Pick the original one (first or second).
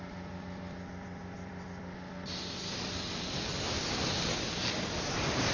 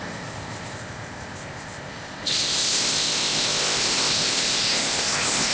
first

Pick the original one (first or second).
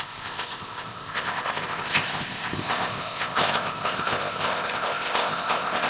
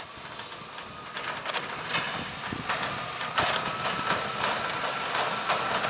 second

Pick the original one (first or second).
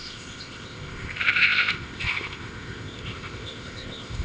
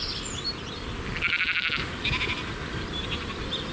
second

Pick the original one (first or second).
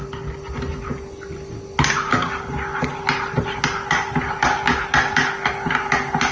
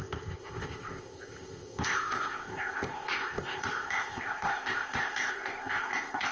first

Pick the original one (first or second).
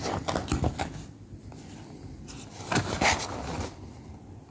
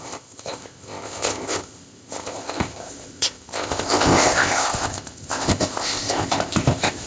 first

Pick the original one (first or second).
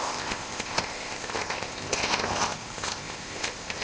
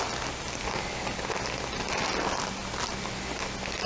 second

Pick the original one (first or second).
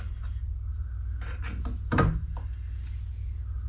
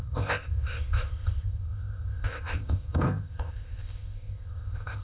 first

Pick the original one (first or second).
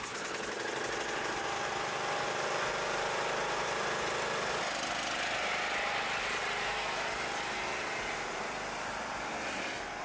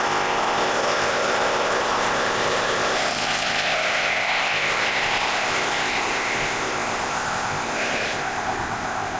first